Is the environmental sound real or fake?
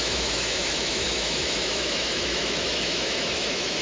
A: fake